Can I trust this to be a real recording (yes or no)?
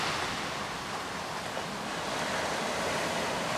yes